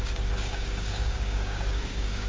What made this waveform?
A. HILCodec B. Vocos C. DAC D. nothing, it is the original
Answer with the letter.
C